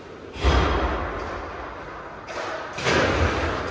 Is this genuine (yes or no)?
yes